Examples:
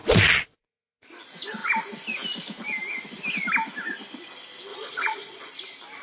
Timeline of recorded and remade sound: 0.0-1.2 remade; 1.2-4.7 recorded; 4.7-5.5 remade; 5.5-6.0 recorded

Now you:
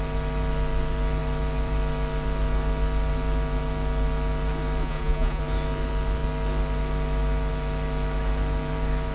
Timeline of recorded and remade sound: 0.0-4.8 recorded; 4.8-5.4 remade; 5.4-9.1 recorded

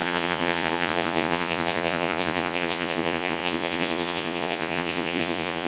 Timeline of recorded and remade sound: 0.0-5.7 remade

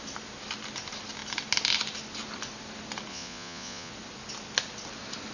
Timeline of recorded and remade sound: 0.0-3.1 recorded; 3.1-3.9 remade; 3.9-5.3 recorded

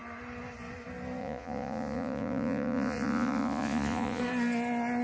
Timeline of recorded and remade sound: 0.0-1.2 recorded; 1.2-4.2 remade; 4.2-5.0 recorded